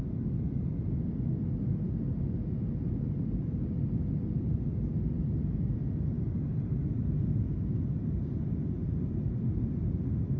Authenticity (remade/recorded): recorded